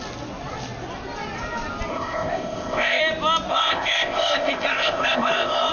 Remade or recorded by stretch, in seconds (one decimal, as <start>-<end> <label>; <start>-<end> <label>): 0.0-1.9 recorded; 1.9-3.0 remade; 3.0-3.5 recorded; 3.5-5.7 remade